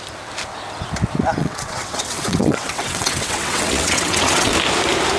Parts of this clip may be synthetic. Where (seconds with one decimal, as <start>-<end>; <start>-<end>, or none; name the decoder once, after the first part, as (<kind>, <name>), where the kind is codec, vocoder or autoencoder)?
1.4-4.5 (vocoder, WaveNeXt)